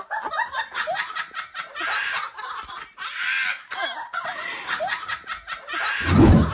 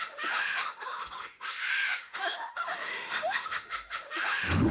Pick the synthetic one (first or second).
second